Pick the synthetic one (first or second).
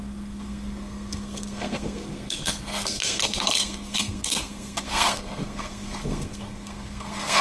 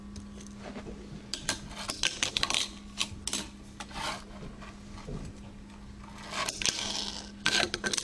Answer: first